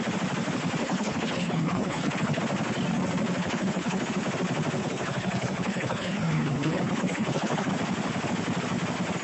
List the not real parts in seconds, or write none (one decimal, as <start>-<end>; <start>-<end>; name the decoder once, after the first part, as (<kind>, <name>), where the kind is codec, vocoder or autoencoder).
0.8-2.4 (codec, HILCodec); 3.4-4.0; 4.8-7.7